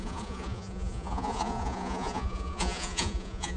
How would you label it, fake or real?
fake